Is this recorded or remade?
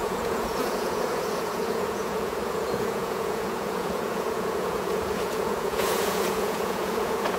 remade